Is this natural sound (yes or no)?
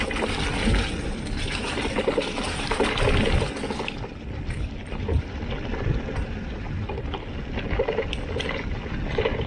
yes